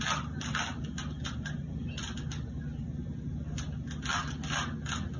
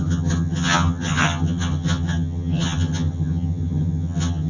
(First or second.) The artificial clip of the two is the second